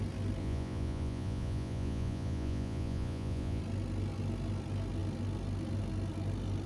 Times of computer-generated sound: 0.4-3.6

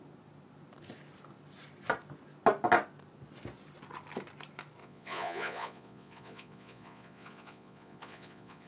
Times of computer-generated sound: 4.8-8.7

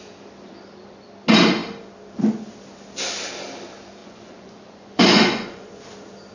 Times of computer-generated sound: 4.0-5.7